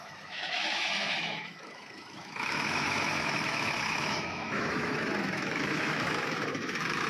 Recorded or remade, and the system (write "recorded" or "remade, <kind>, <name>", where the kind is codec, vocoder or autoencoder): remade, autoencoder, DAC-VAE